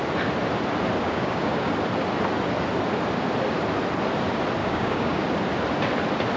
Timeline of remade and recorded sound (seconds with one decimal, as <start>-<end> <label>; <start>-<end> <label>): 0.0-1.0 recorded; 1.0-1.7 remade; 1.7-4.6 recorded; 4.6-5.2 remade; 5.2-6.4 recorded